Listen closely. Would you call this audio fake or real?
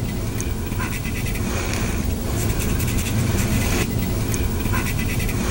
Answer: fake